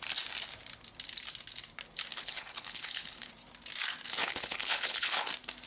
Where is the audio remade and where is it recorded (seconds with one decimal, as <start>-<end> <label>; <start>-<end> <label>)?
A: 0.0-2.1 recorded; 2.1-3.3 remade; 3.3-4.2 recorded; 4.2-5.3 remade; 5.3-5.7 recorded